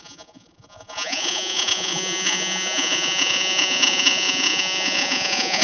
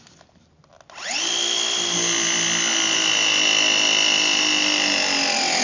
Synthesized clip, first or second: first